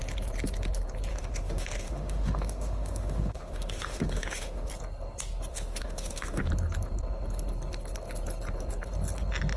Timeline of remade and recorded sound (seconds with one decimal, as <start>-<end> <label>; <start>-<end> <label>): 0.0-1.1 recorded; 1.1-4.7 remade; 4.7-5.5 recorded; 5.5-6.5 remade; 6.5-9.6 recorded